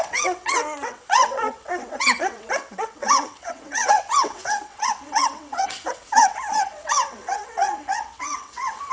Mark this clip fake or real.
fake